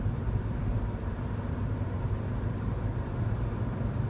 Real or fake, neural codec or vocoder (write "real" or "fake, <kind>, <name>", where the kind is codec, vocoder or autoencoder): fake, vocoder, BigVGAN v2